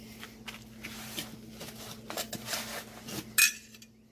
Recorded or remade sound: recorded